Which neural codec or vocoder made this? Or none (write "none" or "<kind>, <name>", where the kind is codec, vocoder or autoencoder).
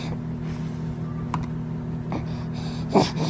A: none